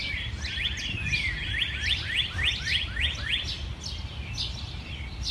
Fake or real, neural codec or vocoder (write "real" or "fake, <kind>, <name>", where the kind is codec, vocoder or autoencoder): real